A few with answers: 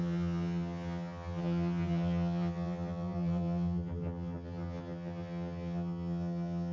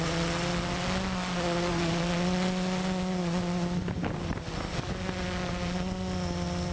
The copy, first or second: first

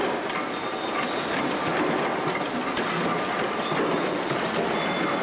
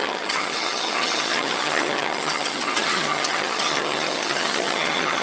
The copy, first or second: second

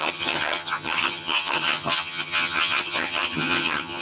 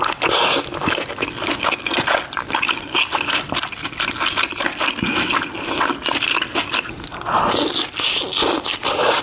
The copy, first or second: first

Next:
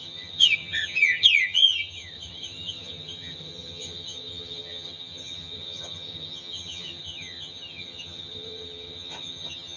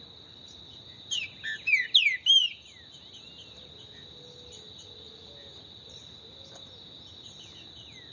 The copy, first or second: first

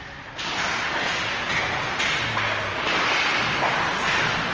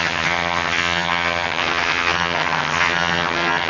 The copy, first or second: second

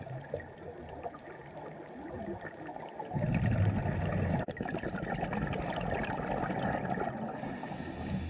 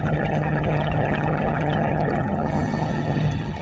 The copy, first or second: second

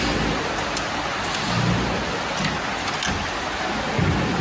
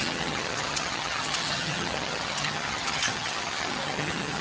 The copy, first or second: second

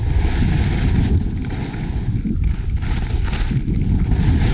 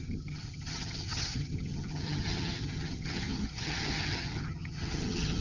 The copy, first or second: second